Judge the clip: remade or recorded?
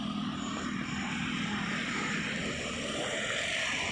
remade